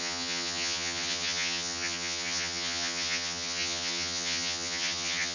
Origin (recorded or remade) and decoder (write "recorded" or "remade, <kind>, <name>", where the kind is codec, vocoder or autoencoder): remade, vocoder, HiFi-GAN